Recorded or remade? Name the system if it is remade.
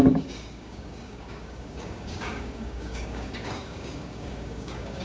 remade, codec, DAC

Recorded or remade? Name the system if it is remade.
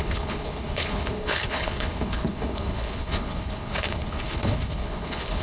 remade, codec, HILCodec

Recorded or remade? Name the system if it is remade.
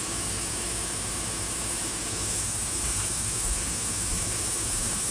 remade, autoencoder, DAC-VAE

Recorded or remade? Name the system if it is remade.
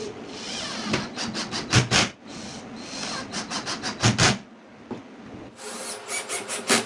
recorded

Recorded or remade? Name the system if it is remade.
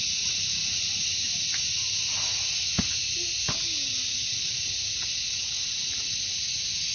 recorded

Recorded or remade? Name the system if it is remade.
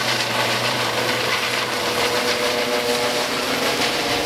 remade, vocoder, BigVGAN v2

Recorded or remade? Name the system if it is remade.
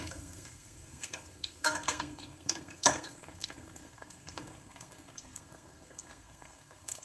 remade, codec, SNAC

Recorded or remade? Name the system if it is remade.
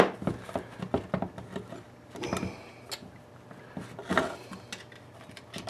recorded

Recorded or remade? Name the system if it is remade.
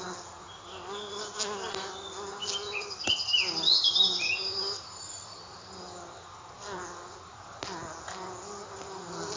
recorded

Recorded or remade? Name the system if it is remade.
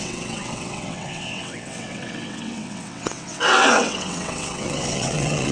remade, vocoder, WaveNeXt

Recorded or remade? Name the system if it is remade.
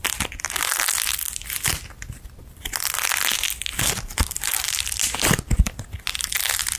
recorded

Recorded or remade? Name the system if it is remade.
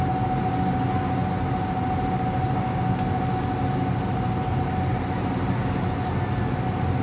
recorded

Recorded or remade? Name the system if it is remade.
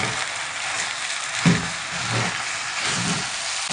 recorded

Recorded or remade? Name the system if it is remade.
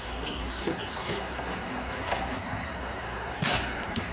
remade, codec, SNAC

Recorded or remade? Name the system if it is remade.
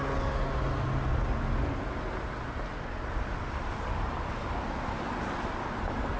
recorded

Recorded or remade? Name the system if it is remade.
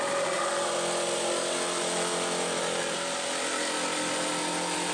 recorded